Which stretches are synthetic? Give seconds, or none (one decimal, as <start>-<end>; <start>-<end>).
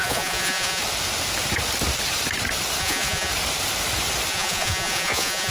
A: 0.0-0.8; 2.8-3.3; 4.3-5.5